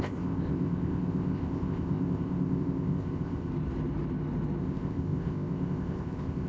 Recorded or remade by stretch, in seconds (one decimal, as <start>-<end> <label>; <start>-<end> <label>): 0.0-3.5 remade; 3.5-4.6 recorded; 4.6-6.5 remade